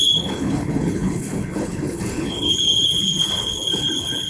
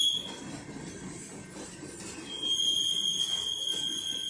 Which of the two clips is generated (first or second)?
first